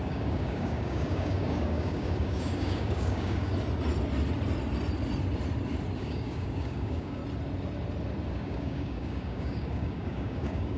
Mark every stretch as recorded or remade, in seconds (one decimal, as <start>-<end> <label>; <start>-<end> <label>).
0.0-3.5 remade; 3.5-6.0 recorded; 6.0-7.2 remade; 7.2-8.3 recorded; 8.3-10.8 remade